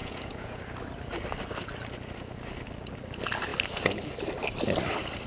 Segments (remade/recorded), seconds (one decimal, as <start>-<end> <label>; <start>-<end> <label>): 0.0-0.6 remade; 0.6-5.3 recorded